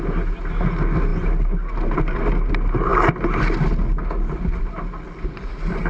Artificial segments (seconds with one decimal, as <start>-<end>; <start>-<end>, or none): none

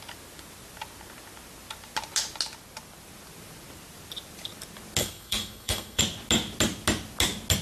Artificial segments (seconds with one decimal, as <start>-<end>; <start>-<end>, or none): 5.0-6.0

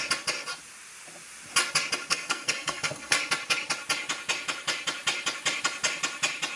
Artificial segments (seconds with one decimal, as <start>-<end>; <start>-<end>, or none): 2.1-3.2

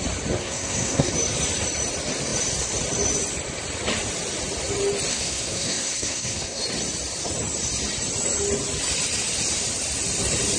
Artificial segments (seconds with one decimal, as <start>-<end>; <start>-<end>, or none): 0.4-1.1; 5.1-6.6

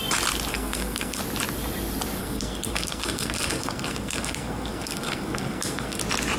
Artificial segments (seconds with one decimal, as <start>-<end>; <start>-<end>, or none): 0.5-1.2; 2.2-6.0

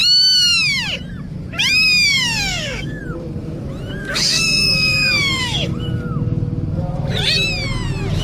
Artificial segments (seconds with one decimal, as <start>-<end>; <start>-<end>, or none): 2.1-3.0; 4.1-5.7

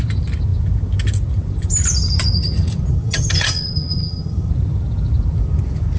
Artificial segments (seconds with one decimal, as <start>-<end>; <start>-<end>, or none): 2.9-4.5